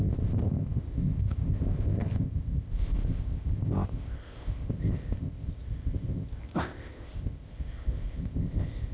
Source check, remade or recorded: remade